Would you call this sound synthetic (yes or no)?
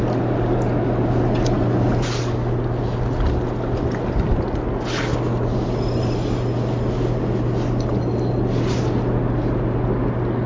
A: no